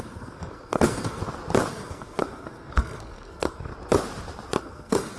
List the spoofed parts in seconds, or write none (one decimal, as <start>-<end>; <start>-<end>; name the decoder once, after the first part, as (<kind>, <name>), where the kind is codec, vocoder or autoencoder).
0.0-1.2 (codec, SNAC); 1.7-3.7; 4.6-5.2